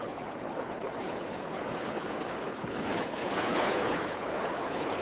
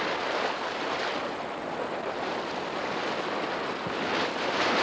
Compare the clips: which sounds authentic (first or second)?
second